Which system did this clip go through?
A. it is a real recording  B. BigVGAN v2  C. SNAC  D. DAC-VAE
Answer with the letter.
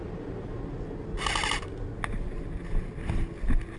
A